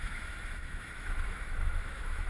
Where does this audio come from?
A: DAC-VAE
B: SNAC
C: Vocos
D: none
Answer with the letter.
A